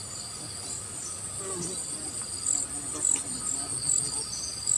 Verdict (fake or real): real